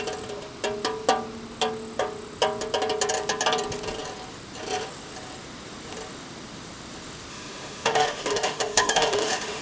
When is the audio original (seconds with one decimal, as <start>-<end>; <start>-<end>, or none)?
0.0-7.3